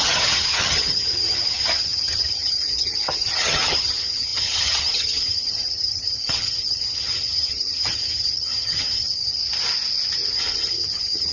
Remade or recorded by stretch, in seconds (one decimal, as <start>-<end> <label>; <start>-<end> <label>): 0.0-9.4 remade; 9.4-10.3 recorded; 10.3-11.3 remade